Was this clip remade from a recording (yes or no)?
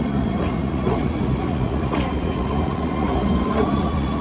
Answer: yes